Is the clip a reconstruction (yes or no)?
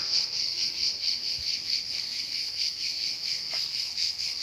yes